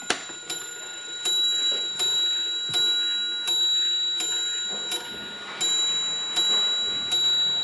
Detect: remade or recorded recorded